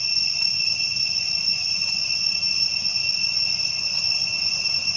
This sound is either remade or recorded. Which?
remade